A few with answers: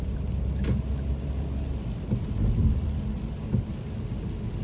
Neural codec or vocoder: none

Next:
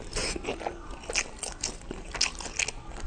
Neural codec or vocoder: none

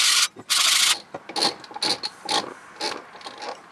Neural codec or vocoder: none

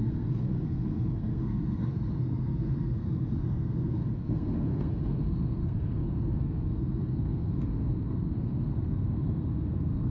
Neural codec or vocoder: codec, SNAC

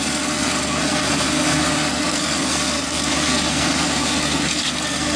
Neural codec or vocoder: codec, SNAC